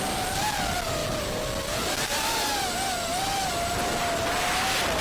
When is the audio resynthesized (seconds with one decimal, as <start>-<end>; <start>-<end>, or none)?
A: none